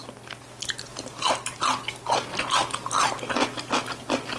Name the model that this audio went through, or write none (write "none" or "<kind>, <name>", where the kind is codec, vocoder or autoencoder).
none